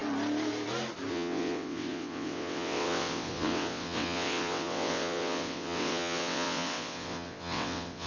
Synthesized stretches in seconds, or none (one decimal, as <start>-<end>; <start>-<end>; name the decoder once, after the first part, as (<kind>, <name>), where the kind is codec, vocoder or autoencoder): 1.1-8.1 (vocoder, WaveNeXt)